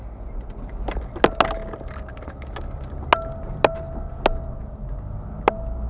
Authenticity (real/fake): real